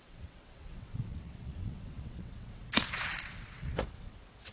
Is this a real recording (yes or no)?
no